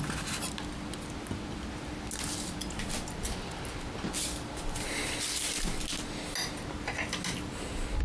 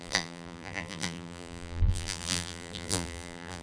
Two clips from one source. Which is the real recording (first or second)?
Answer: first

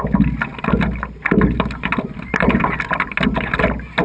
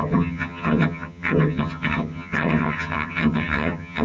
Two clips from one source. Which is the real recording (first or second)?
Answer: first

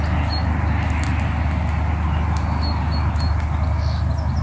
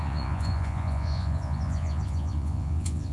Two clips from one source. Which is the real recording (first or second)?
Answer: first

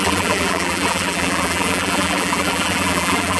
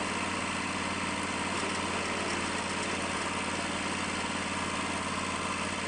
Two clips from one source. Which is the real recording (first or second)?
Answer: second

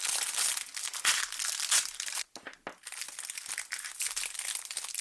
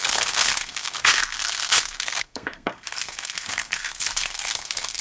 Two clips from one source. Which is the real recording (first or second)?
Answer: first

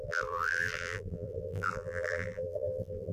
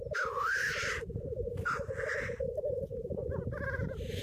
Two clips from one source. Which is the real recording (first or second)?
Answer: second